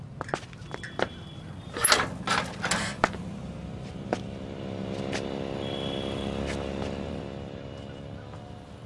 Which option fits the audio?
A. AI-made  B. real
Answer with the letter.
B